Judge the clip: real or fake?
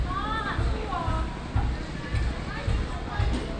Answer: real